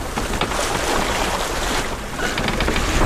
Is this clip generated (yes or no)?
no